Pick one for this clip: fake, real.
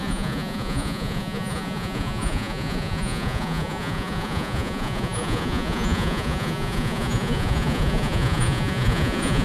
fake